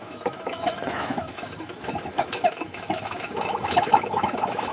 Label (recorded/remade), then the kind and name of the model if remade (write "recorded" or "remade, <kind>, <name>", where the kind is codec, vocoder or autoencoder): remade, autoencoder, DAC-VAE